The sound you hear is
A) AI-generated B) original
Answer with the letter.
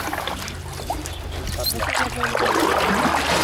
B